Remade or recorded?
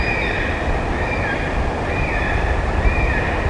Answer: recorded